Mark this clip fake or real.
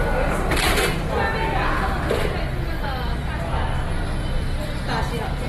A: real